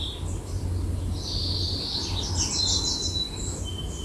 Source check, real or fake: real